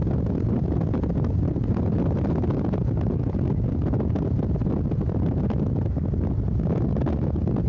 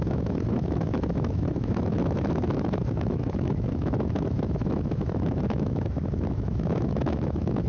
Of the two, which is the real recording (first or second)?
first